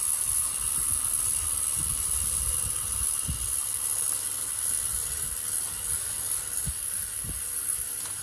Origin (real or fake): real